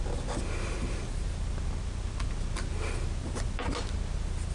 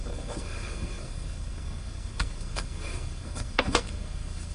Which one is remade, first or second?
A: second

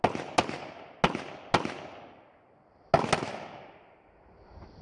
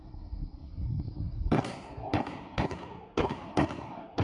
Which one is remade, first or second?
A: second